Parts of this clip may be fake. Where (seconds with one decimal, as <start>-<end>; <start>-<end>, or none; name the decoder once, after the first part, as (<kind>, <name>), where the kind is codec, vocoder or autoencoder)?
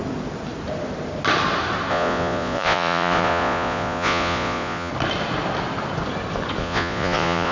1.9-4.9 (vocoder, Vocos); 6.6-7.5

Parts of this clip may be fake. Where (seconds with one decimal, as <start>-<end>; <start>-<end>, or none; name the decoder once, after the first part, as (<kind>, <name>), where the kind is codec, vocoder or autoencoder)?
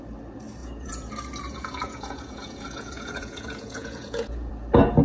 0.6-1.1 (vocoder, Vocos); 1.5-4.5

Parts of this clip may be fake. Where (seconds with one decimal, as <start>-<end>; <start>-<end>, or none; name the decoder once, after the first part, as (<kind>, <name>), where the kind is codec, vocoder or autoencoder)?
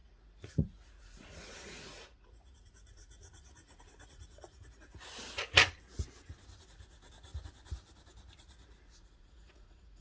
0.0-4.9 (vocoder, Vocos); 6.6-7.3; 8.4-10.0